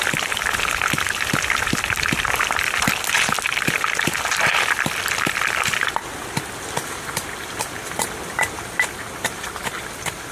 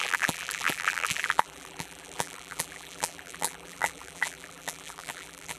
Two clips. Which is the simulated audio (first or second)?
second